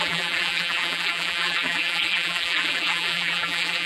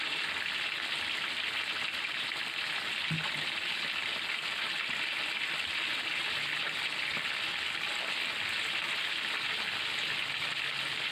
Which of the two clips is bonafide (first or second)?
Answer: second